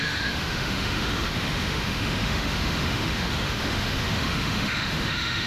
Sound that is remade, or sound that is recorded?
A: remade